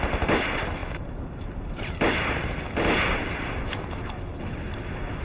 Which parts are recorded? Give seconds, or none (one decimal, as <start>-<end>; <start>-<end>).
0.0-5.2